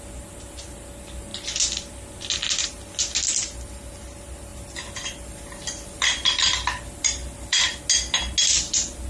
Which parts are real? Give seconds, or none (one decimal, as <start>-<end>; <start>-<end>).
0.0-4.5; 7.8-9.1